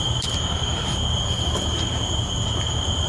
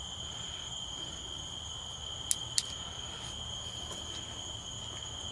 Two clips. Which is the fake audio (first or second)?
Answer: first